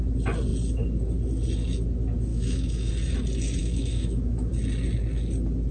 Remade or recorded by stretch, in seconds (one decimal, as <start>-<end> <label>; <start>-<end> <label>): 0.0-2.3 recorded; 2.3-2.9 remade; 2.9-3.6 recorded; 3.6-4.5 remade; 4.5-5.7 recorded